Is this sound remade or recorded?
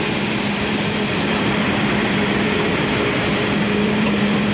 remade